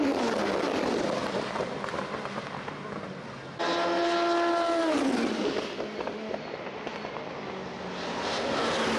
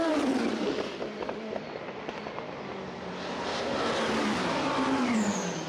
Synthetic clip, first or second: second